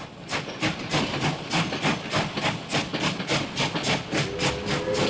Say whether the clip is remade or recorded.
recorded